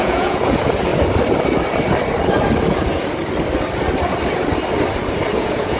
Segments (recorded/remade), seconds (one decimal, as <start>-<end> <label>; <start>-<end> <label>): 0.0-0.9 remade; 0.9-2.6 recorded; 2.6-3.2 remade; 3.2-5.3 recorded; 5.3-5.8 remade